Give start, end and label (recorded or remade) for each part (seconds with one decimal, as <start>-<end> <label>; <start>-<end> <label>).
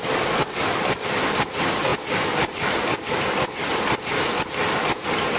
0.0-5.4 recorded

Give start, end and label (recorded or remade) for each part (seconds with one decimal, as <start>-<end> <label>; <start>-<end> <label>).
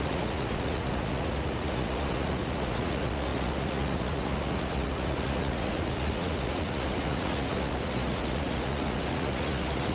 0.0-9.9 remade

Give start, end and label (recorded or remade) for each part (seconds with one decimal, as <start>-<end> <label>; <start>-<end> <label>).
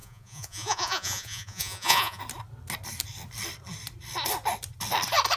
0.0-2.2 remade; 2.2-5.4 recorded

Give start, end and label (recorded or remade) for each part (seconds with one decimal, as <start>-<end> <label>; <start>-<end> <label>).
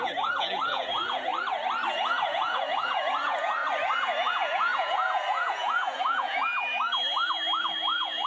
0.0-1.3 remade; 1.3-1.9 recorded; 1.9-3.6 remade; 3.6-4.3 recorded; 4.3-6.5 remade; 6.5-7.6 recorded; 7.6-8.3 remade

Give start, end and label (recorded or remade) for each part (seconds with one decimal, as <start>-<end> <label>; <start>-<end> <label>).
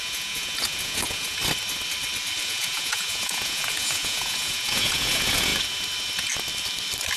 0.0-1.4 remade; 1.4-2.4 recorded; 2.4-5.5 remade; 5.5-7.2 recorded